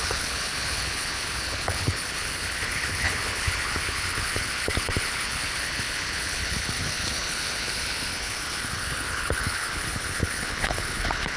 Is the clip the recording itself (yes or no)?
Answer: no